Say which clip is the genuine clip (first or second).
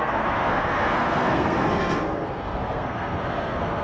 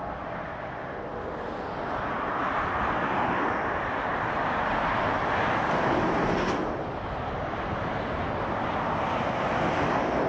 second